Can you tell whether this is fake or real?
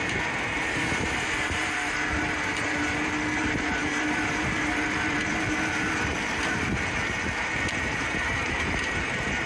fake